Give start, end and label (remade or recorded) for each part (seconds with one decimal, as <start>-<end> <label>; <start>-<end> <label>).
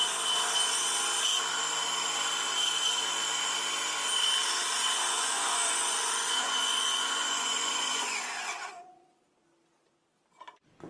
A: 0.0-5.1 recorded; 5.1-9.2 remade; 9.2-10.9 recorded